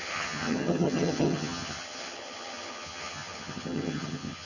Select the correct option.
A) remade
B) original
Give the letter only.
A